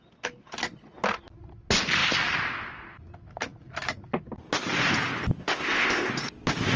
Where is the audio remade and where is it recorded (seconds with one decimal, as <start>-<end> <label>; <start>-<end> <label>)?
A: 0.0-5.4 recorded; 5.4-6.1 remade; 6.1-6.8 recorded